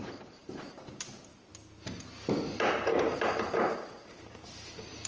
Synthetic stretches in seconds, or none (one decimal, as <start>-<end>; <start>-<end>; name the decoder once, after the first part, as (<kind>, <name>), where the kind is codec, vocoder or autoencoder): 0.0-1.3 (vocoder, BigVGAN v2); 3.5-5.1